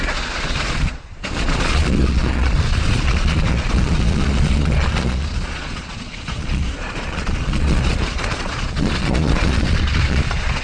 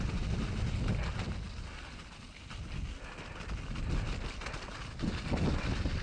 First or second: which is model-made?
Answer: first